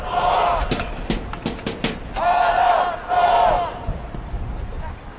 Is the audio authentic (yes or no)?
yes